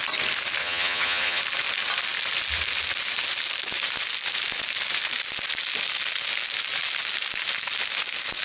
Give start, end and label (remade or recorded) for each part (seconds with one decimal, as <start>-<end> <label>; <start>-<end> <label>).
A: 0.0-0.6 recorded; 0.6-1.4 remade; 1.4-8.4 recorded